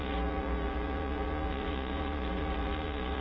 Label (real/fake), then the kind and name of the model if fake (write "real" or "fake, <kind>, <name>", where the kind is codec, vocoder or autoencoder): fake, vocoder, Vocos